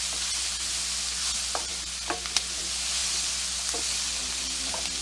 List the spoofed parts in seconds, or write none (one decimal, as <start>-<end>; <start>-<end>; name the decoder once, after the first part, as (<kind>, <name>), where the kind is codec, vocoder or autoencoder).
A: 3.0-4.2 (vocoder, BigVGAN v2)

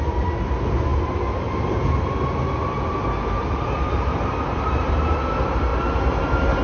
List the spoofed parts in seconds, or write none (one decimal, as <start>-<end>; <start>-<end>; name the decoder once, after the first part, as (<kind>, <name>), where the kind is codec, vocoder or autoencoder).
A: none

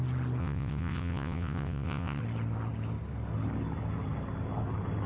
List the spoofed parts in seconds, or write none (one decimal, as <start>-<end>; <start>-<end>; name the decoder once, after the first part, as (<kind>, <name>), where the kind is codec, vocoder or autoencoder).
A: 0.4-2.2 (vocoder, WaveNeXt)

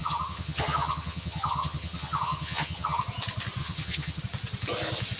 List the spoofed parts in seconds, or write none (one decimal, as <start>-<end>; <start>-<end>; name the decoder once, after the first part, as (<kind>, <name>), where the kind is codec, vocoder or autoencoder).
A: 0.0-3.0 (vocoder, HiFi-GAN); 3.6-4.2

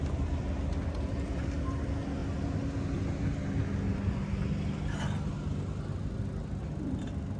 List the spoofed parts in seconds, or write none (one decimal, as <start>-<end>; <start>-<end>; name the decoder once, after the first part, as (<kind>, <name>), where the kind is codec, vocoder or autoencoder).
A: none

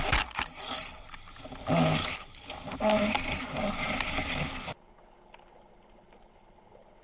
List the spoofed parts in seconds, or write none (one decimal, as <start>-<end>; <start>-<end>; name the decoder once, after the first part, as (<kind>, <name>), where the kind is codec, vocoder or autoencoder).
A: 2.0-2.5 (codec, HILCodec)

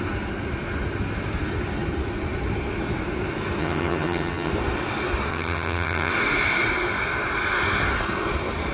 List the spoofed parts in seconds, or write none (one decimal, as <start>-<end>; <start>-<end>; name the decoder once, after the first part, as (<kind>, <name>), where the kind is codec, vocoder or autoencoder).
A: 3.6-4.5 (vocoder, HiFi-GAN); 5.3-6.1